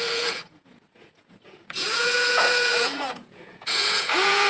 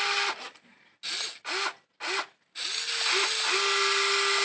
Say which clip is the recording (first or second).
second